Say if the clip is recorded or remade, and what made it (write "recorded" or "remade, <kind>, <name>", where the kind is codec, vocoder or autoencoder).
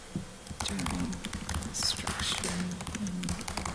recorded